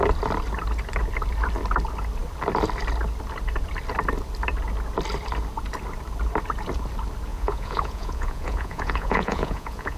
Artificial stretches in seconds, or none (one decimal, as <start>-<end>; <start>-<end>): 7.3-10.0